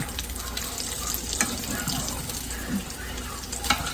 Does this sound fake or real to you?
real